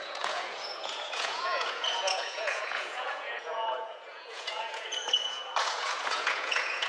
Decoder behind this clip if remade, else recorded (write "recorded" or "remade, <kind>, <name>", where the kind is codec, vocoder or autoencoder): remade, vocoder, Vocos